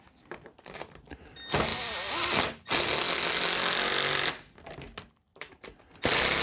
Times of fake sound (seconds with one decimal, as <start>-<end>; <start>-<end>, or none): none